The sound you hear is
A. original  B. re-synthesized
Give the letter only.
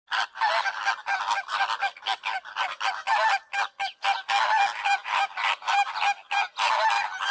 A